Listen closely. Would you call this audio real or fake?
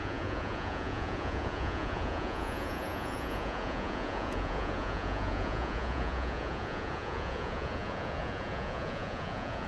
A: fake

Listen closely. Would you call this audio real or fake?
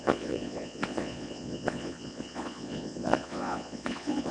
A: fake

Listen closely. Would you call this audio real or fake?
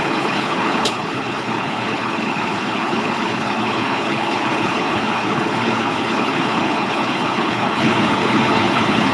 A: fake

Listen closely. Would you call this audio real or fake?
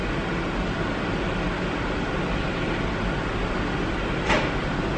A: real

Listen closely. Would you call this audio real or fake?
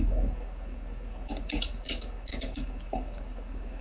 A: fake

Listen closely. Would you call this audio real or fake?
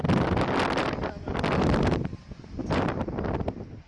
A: real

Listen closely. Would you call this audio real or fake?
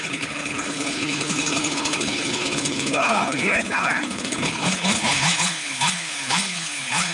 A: fake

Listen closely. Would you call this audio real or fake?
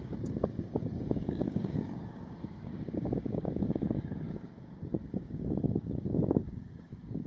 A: fake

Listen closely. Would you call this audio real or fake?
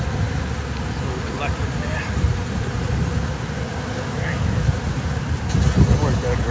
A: real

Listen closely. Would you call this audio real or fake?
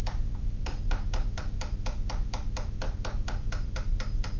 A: real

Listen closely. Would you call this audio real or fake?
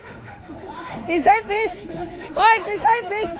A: fake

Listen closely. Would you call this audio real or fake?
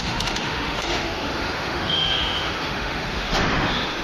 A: fake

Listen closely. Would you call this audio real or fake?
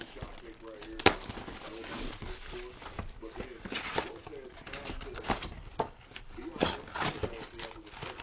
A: real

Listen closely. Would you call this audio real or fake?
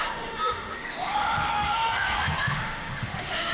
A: fake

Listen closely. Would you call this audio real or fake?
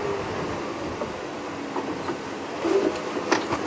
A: real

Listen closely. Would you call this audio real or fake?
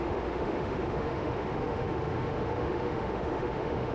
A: fake